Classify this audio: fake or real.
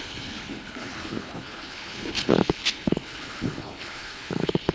fake